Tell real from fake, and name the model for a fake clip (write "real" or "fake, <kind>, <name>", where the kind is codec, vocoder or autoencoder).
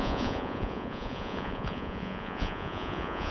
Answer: fake, vocoder, Vocos